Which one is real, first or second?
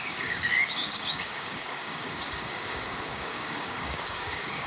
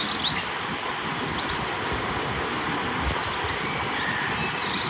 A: second